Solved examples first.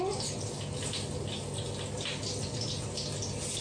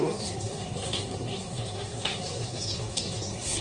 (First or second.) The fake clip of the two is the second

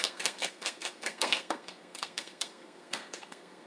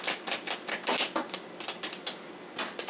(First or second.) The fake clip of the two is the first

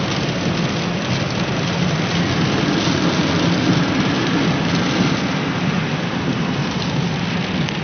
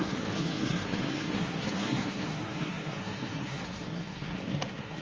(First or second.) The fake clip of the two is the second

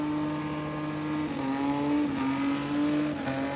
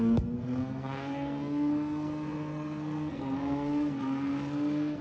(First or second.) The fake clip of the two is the second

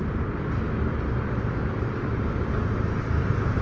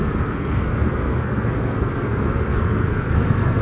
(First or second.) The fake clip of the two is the second